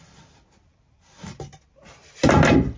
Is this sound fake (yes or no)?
no